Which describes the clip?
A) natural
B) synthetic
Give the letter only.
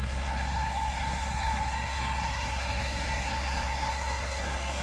B